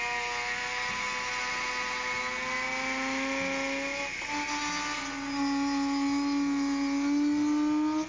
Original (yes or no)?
yes